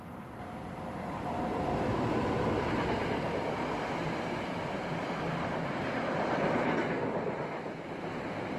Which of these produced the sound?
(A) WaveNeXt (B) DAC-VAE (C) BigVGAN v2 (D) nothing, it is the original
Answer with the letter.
D